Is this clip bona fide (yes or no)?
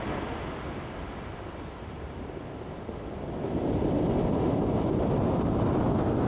yes